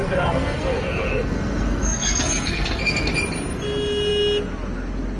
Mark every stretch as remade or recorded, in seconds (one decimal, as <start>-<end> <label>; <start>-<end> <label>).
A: 0.0-3.1 remade; 3.1-5.2 recorded